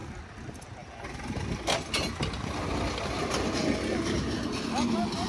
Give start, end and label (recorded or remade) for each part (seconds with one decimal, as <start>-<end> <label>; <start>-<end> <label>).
0.0-5.3 recorded